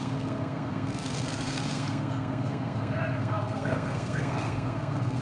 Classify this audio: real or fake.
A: fake